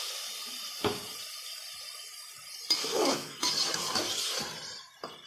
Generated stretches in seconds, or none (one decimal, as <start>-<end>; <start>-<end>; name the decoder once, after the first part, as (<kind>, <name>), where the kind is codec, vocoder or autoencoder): 2.8-3.5 (autoencoder, DAC-VAE)

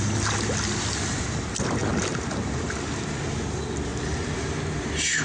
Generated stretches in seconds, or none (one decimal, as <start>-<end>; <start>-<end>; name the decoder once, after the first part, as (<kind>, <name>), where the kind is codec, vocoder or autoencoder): none